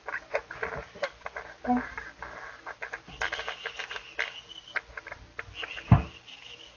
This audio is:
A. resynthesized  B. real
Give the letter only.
B